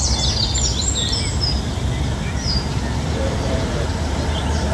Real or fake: real